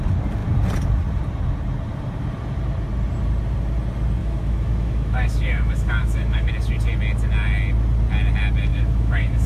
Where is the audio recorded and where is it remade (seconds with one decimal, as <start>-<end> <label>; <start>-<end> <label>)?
0.0-4.2 recorded; 4.2-6.5 remade; 6.5-8.7 recorded; 8.7-9.5 remade